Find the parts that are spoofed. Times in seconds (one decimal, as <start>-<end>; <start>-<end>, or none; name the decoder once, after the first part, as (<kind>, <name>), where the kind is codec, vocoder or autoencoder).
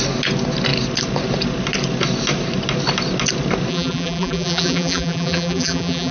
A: 3.7-6.1 (vocoder, BigVGAN v2)